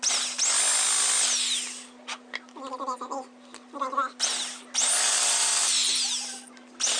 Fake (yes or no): no